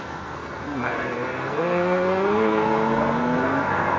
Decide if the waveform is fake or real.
fake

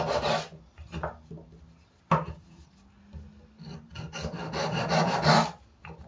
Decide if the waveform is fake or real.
real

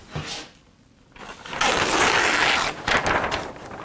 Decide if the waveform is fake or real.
real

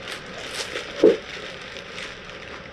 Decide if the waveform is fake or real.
real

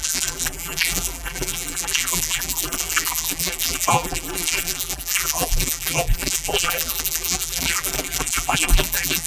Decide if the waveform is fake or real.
fake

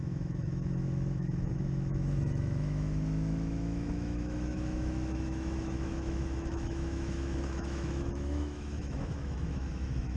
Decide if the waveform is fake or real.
fake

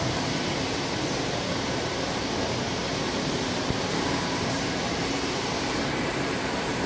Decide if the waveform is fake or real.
fake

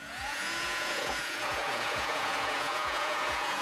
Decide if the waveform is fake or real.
fake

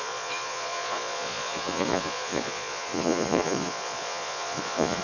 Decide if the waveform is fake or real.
fake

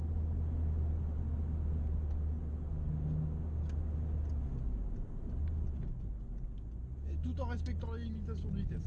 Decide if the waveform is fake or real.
real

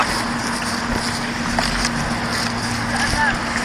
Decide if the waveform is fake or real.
real